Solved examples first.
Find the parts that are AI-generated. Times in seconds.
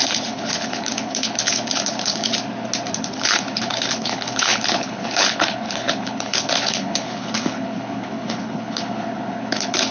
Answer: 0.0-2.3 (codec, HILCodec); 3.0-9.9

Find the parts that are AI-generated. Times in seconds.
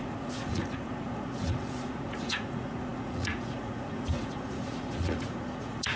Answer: 0.0-6.0 (vocoder, Vocos)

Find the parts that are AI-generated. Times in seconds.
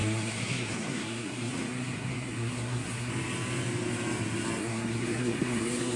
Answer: 0.0-3.1 (codec, SNAC); 4.6-6.0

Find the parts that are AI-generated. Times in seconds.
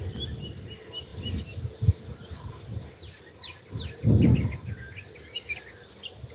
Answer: none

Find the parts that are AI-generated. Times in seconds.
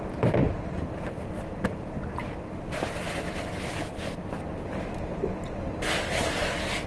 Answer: none